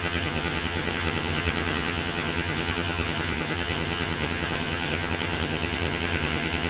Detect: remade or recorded remade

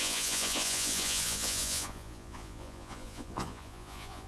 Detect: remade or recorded remade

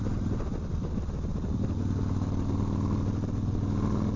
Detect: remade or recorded recorded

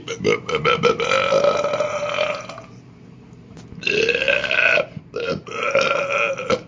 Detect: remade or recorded recorded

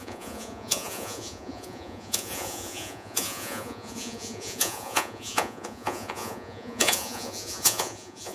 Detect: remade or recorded remade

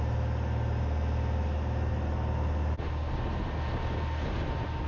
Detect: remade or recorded recorded